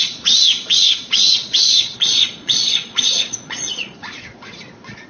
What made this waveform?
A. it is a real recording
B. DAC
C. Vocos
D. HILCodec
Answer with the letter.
C